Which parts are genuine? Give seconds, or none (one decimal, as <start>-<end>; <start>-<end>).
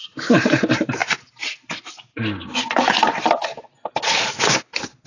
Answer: 0.0-5.1